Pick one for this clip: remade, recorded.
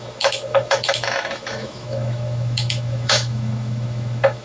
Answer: remade